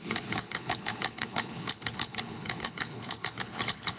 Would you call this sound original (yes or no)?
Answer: no